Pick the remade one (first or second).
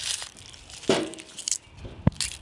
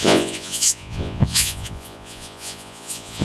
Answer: second